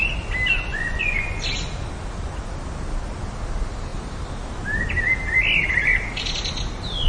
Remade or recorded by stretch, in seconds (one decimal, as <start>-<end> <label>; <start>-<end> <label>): 0.0-0.7 recorded; 0.7-1.4 remade; 1.4-7.1 recorded